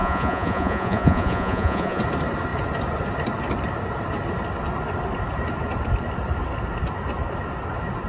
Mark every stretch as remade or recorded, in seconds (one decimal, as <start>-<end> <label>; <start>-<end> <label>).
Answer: 0.0-2.0 remade; 2.0-8.1 recorded